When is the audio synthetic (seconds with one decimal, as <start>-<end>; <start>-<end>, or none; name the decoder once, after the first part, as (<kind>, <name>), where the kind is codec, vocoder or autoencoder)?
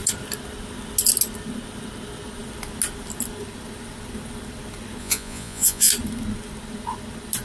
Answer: 5.0-5.9 (vocoder, Vocos)